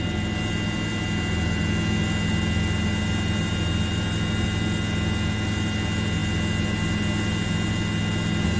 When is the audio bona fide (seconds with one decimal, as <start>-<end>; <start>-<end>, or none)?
0.0-8.6